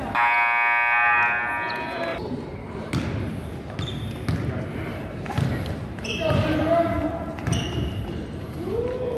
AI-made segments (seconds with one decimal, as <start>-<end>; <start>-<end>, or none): 2.1-2.9; 4.9-9.2